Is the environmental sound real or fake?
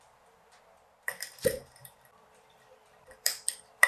fake